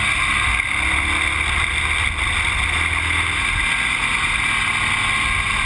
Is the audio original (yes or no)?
yes